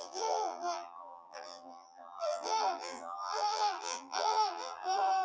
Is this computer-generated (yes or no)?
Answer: yes